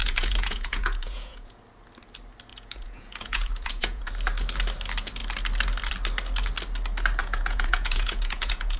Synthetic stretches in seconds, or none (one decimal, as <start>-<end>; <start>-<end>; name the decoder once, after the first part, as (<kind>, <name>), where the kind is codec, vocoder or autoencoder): 0.0-1.6 (vocoder, Vocos); 2.5-4.1; 7.2-8.8